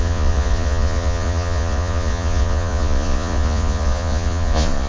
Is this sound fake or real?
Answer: fake